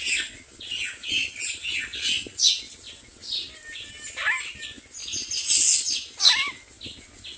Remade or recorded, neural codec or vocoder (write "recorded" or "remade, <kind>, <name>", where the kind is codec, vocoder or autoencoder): recorded